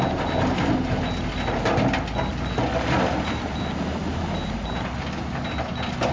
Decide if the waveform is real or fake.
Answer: real